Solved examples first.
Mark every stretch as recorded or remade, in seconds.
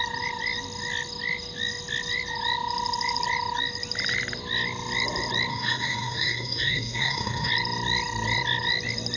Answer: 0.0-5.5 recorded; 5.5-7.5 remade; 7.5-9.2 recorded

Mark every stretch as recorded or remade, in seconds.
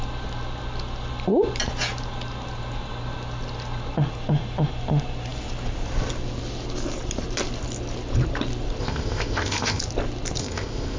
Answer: 0.0-8.8 recorded; 8.8-9.8 remade; 9.8-10.4 recorded; 10.4-11.0 remade